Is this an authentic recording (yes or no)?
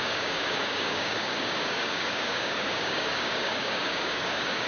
no